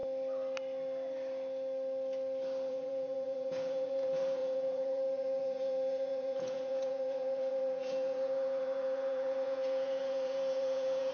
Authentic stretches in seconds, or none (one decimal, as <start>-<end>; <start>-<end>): 0.0-2.7